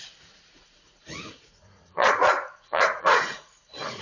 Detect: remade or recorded remade